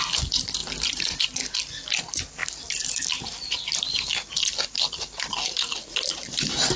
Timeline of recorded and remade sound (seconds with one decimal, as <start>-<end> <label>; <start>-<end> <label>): 0.0-6.8 recorded

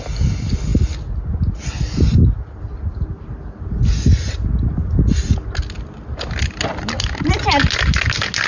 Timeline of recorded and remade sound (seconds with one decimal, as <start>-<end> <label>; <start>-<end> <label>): 0.0-8.5 recorded